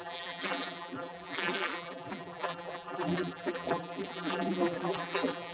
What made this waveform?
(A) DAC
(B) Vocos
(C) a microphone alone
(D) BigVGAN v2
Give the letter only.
D